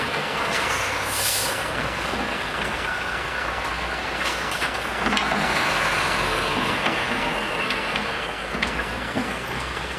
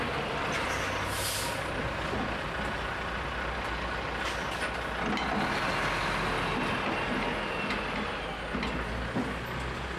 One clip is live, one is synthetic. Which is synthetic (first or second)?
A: first